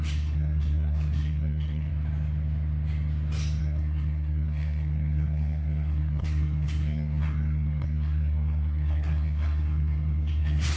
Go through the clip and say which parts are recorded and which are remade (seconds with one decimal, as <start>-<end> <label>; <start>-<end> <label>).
0.0-1.9 remade; 1.9-3.6 recorded; 3.6-10.8 remade

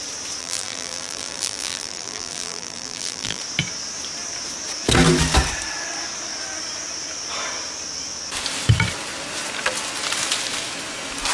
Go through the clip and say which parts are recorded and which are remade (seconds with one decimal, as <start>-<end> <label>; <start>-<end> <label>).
0.0-0.4 recorded; 0.4-3.4 remade; 3.4-11.3 recorded

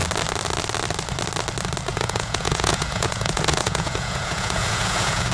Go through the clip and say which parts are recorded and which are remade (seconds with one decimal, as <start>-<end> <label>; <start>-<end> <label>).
0.0-1.9 recorded; 1.9-5.3 remade

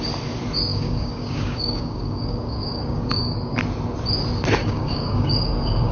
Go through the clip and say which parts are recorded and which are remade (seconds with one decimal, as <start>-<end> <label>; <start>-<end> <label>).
0.0-0.7 recorded; 0.7-3.6 remade; 3.6-4.6 recorded; 4.6-5.9 remade

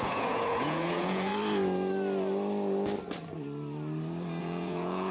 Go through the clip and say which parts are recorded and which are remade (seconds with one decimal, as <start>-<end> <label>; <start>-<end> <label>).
0.0-1.3 remade; 1.3-4.4 recorded; 4.4-5.1 remade

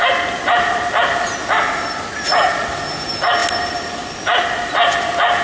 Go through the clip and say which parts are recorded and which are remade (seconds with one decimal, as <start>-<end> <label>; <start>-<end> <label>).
0.0-5.4 recorded

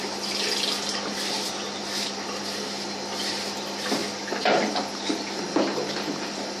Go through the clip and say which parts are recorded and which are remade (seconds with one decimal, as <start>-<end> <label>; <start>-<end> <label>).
0.0-6.6 recorded

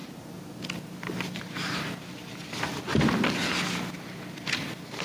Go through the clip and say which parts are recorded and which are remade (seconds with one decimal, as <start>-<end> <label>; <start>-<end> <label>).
0.0-5.0 recorded